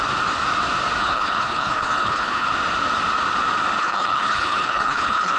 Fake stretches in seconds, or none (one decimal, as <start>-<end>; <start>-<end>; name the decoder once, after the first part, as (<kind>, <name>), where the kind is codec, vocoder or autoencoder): 1.0-2.5 (codec, HILCodec); 3.8-5.4